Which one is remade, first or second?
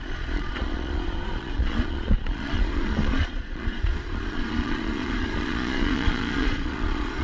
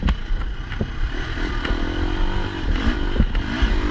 first